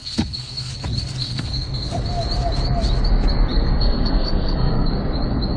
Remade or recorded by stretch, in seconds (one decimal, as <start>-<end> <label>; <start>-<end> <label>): 0.0-0.7 remade; 0.7-1.2 recorded; 1.2-2.0 remade; 2.0-3.5 recorded; 3.5-4.9 remade; 4.9-5.6 recorded